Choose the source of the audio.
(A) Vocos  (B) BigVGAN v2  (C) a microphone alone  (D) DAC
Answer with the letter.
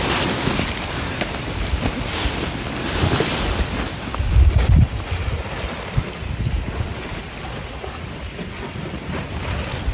C